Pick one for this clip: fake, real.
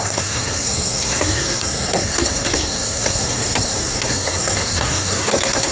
fake